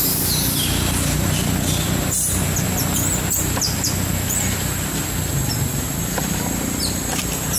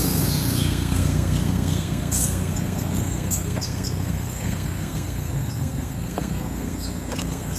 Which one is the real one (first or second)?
first